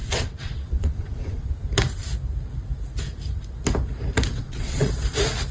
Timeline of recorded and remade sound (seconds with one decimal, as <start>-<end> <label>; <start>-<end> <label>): 0.0-1.5 remade; 1.5-4.3 recorded; 4.3-4.9 remade; 4.9-5.5 recorded

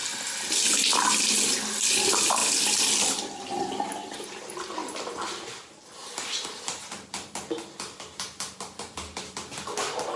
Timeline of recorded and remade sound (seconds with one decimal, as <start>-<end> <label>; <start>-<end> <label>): 0.0-6.0 recorded; 6.0-7.3 remade; 7.3-10.2 recorded

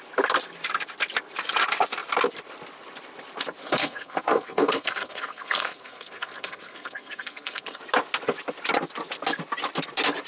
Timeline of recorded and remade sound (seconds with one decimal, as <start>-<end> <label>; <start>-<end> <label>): 0.0-3.6 recorded; 3.6-7.8 remade; 7.8-10.3 recorded

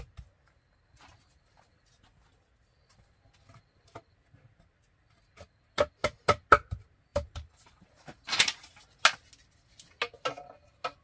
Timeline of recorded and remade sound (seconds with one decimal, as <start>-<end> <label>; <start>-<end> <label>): 0.0-7.1 recorded; 7.1-9.0 remade; 9.0-11.0 recorded

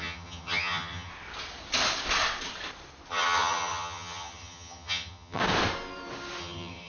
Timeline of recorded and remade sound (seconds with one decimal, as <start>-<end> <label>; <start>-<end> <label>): 0.0-1.1 remade; 1.1-3.1 recorded; 3.1-5.4 remade; 5.4-6.4 recorded; 6.4-6.9 remade